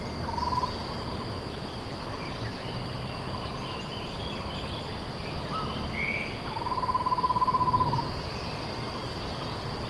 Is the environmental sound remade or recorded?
recorded